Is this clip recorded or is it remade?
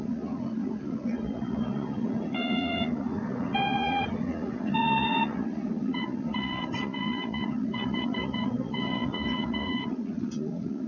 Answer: remade